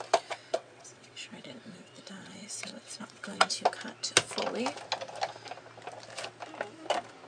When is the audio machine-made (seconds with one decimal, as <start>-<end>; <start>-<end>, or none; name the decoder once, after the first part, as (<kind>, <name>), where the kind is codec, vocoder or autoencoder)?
0.4-3.5 (vocoder, WaveNeXt)